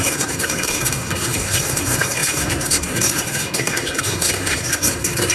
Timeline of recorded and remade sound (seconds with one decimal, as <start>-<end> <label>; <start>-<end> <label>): 0.0-5.3 remade

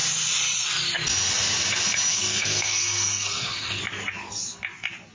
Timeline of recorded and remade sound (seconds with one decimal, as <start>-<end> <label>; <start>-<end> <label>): 0.0-2.1 recorded; 2.1-3.8 remade; 3.8-5.1 recorded

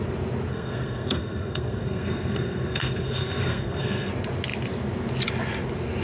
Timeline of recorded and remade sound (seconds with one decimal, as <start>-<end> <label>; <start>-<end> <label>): 0.0-0.5 recorded; 0.5-4.1 remade; 4.1-6.0 recorded

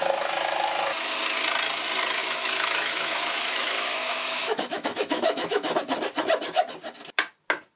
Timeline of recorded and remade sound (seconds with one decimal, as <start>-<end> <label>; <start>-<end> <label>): 0.0-2.2 recorded; 2.2-5.8 remade; 5.8-7.8 recorded

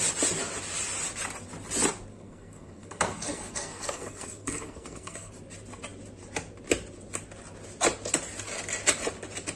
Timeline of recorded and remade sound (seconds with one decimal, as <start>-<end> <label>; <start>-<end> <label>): 0.0-2.1 recorded; 2.1-5.3 remade; 5.3-9.6 recorded

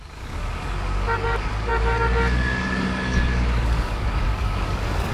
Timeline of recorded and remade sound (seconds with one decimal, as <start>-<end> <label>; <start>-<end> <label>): 0.0-5.1 remade

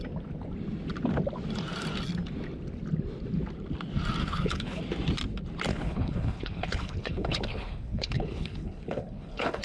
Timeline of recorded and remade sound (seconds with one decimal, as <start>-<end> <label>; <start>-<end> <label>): 0.0-4.2 recorded; 4.2-4.8 remade; 4.8-5.7 recorded; 5.7-9.6 remade

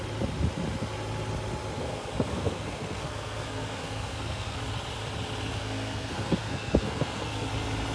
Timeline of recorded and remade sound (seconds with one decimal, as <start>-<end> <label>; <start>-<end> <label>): 0.0-1.8 recorded; 1.8-4.6 remade; 4.6-5.5 recorded; 5.5-7.5 remade; 7.5-7.9 recorded